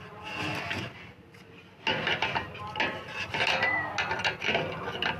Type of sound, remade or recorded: recorded